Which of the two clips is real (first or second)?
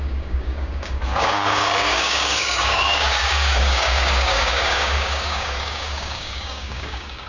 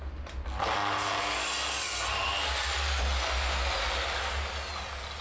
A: second